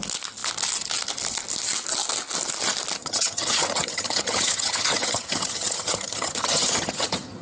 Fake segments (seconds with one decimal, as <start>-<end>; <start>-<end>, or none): 3.0-7.4